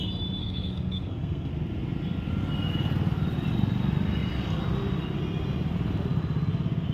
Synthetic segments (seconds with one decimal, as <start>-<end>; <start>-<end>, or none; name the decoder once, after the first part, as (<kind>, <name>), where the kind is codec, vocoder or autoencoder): 0.4-1.5 (codec, SNAC)